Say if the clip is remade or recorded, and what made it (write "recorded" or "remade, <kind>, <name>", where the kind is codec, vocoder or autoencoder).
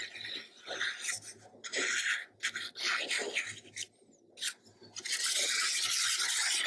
recorded